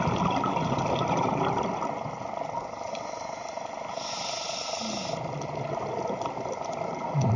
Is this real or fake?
real